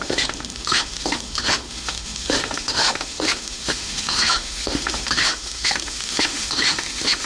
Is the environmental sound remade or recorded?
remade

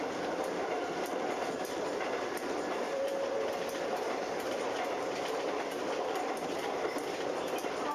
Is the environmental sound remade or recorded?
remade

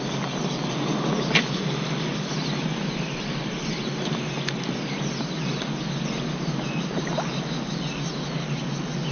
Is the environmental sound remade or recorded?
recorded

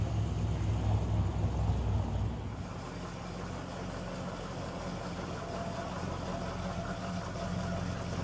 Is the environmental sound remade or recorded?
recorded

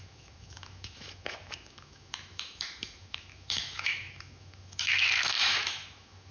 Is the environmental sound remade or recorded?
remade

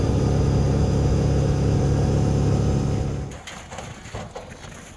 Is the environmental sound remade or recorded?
recorded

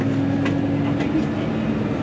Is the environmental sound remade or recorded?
recorded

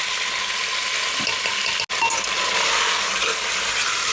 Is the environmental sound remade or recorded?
recorded